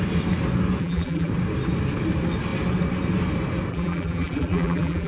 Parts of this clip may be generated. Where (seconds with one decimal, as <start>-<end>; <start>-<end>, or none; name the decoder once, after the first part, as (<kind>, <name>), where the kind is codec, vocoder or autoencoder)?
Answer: 0.8-1.3 (vocoder, BigVGAN v2); 3.7-5.1